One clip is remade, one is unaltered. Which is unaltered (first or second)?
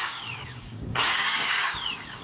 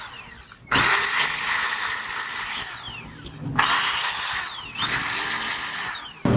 second